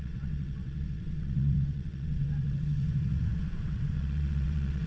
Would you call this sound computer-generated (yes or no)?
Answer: yes